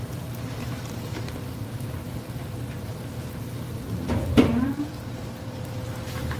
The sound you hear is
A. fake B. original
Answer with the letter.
A